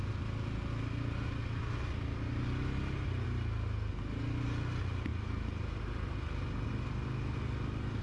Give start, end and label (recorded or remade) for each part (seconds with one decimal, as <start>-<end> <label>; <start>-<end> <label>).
0.0-8.0 recorded